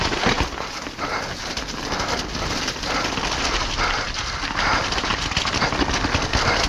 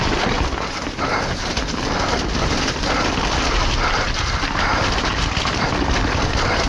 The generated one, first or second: second